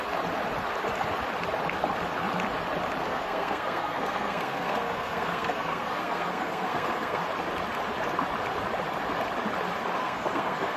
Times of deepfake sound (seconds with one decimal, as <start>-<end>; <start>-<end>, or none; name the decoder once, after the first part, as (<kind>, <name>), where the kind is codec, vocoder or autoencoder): 3.0-7.2 (codec, SNAC); 10.0-10.8